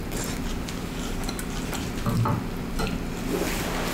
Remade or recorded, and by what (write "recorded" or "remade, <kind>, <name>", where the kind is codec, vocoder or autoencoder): recorded